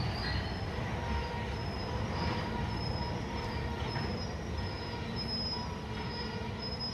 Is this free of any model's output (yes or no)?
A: yes